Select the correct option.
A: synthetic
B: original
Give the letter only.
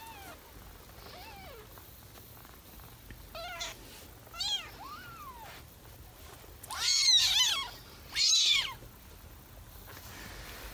B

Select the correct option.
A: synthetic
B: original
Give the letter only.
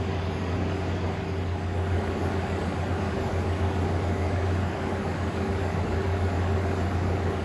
A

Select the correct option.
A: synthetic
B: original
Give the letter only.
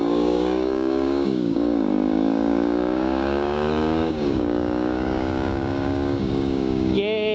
A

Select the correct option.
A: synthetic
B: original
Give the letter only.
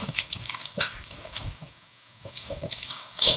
A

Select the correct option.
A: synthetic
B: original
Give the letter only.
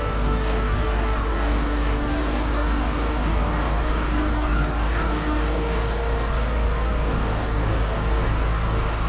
A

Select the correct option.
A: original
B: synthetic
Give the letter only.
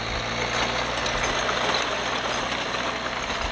A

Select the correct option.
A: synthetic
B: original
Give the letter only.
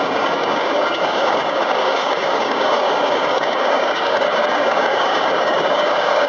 A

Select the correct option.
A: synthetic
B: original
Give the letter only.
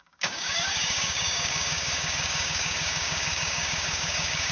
A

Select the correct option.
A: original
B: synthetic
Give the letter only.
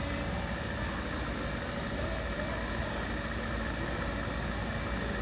A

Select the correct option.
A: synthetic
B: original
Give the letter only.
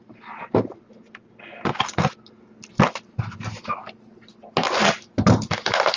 B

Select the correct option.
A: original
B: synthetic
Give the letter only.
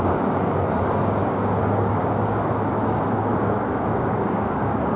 B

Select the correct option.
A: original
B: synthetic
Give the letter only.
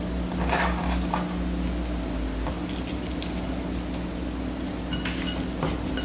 A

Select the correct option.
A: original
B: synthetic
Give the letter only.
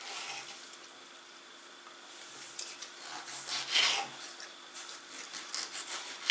A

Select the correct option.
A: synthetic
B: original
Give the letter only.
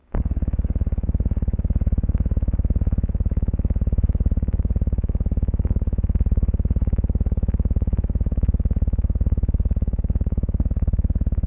A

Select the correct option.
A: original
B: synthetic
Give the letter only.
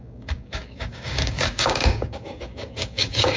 B